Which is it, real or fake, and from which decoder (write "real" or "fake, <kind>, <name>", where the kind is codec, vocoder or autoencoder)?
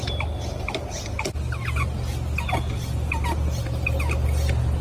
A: real